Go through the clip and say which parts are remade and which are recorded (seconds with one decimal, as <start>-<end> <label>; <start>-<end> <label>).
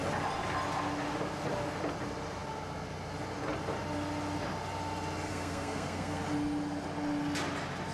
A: 0.0-5.3 recorded; 5.3-6.2 remade; 6.2-7.9 recorded